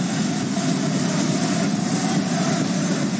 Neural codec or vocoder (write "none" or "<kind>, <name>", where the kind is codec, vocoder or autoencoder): none